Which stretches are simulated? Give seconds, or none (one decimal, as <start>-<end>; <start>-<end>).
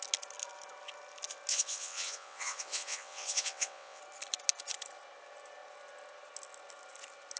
1.5-4.0